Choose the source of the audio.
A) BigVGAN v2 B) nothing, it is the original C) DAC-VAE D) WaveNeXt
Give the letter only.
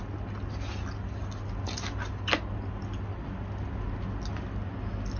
B